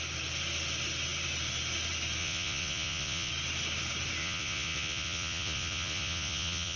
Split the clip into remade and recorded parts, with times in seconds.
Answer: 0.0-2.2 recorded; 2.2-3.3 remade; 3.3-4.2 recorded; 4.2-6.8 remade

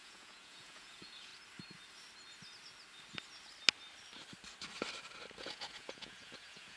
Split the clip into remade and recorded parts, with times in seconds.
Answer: 0.0-1.3 remade; 1.3-5.4 recorded; 5.4-6.8 remade

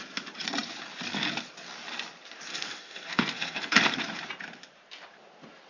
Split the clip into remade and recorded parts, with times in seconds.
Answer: 0.0-2.5 recorded; 2.5-3.8 remade; 3.8-5.7 recorded

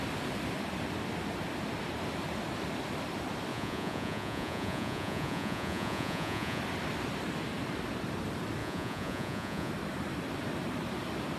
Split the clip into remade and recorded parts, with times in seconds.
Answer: 0.0-3.5 recorded; 3.5-6.6 remade; 6.6-8.6 recorded; 8.6-9.7 remade; 9.7-11.4 recorded

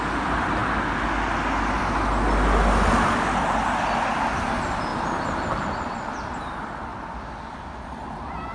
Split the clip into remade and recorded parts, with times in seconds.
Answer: 0.0-8.5 recorded

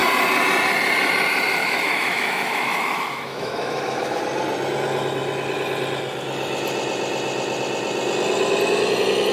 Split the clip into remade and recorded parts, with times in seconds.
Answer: 0.0-1.6 recorded; 1.6-4.2 remade; 4.2-9.3 recorded

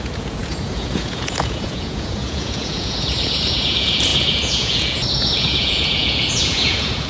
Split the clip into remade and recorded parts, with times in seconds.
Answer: 0.0-7.1 remade